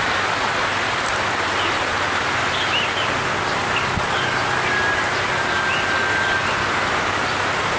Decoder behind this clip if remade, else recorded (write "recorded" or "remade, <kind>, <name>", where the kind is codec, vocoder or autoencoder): recorded